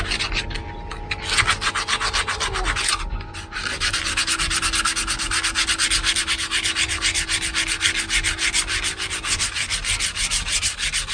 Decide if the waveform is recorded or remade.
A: recorded